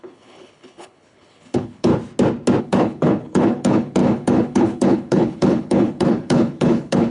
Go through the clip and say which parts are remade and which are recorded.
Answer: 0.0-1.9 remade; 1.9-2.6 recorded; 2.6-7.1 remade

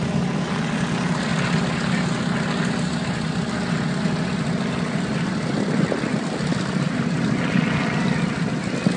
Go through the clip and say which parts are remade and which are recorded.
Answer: 0.0-9.0 recorded

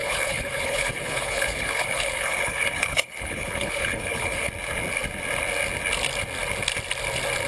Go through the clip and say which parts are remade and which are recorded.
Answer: 0.0-4.5 remade; 4.5-7.5 recorded